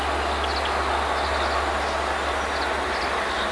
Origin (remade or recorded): recorded